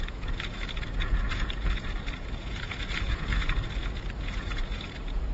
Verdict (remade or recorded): remade